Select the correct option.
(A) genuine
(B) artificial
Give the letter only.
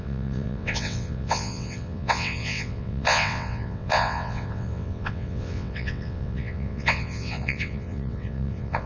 B